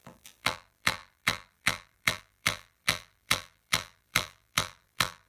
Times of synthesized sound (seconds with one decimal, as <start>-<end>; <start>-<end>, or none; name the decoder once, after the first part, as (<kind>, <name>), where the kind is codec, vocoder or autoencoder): 0.0-5.3 (vocoder, BigVGAN v2)